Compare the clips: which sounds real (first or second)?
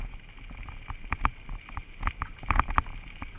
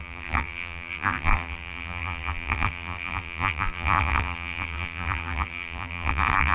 first